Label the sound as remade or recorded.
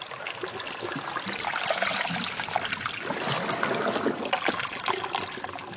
recorded